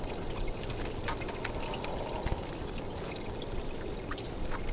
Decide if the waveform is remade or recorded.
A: recorded